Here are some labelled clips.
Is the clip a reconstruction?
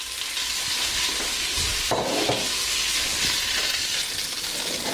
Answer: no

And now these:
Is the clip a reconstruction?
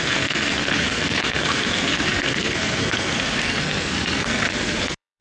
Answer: yes